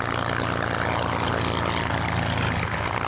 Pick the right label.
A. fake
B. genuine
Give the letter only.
B